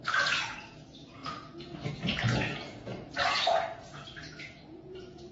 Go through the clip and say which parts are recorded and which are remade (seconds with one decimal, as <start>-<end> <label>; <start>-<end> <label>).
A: 0.0-5.3 remade